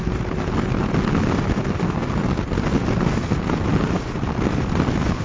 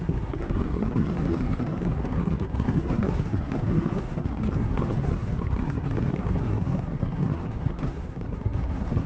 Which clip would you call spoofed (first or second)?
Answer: second